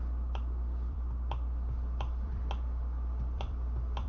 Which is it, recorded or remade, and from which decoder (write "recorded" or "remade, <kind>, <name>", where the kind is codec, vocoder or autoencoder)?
remade, vocoder, BigVGAN v2